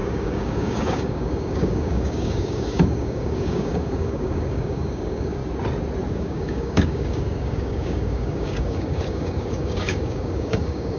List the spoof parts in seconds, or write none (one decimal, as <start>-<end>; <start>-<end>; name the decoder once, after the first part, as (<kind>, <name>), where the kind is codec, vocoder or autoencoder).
0.0-5.4 (codec, DAC); 6.1-11.0